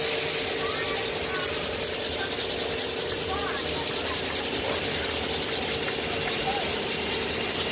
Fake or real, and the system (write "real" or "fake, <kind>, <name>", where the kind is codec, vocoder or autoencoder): real